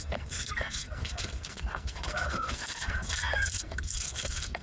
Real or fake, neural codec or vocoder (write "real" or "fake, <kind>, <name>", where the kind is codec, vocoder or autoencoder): fake, codec, SNAC